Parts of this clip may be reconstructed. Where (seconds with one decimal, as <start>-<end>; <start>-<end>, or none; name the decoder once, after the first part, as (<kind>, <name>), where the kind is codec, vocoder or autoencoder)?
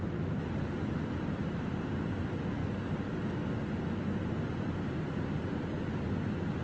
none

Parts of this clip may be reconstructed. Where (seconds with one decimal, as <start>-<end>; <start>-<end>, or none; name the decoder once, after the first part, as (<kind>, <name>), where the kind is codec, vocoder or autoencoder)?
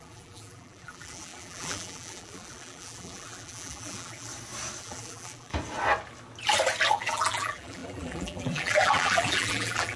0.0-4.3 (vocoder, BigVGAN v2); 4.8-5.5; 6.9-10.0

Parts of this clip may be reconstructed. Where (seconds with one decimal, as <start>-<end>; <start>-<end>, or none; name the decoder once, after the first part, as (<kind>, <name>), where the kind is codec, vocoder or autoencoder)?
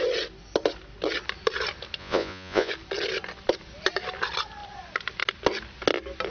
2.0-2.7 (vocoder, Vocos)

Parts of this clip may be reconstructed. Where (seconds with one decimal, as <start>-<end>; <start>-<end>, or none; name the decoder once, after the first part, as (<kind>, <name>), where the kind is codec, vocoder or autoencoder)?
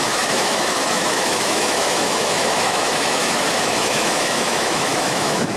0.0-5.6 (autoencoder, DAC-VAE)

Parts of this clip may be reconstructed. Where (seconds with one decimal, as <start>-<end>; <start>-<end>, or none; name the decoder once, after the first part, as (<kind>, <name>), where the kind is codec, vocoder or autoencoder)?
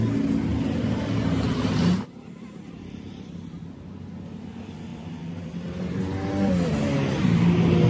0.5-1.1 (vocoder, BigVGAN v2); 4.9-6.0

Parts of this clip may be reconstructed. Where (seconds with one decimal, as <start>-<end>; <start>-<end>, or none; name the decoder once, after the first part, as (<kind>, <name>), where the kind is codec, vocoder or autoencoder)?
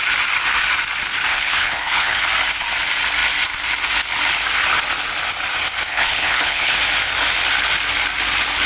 1.3-2.2 (codec, HILCodec); 5.9-6.8